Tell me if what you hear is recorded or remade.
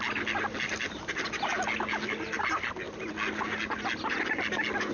recorded